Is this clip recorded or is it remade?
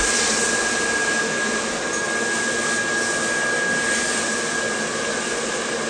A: recorded